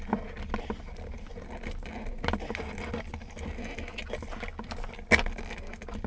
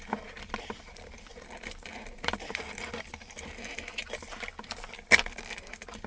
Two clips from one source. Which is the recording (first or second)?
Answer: first